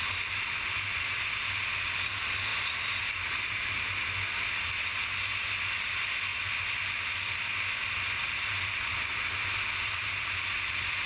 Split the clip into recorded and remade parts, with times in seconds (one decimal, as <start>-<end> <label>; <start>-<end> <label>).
0.0-11.1 recorded